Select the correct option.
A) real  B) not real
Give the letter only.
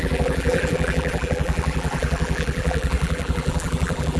B